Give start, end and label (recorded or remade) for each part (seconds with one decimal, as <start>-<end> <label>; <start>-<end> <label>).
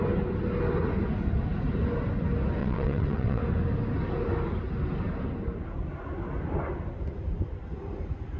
0.0-2.6 recorded; 2.6-3.4 remade; 3.4-8.4 recorded